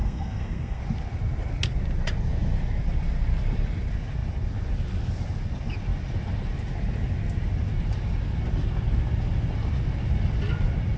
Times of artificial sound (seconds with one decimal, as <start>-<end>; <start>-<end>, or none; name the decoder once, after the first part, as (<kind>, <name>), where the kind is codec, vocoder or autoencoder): 0.0-0.8 (codec, SNAC)